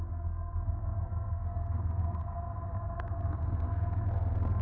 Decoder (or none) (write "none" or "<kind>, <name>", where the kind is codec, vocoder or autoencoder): codec, SNAC